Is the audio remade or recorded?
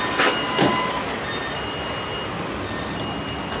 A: recorded